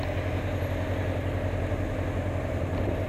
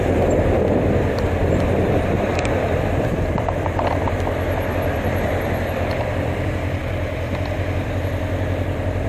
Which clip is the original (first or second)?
first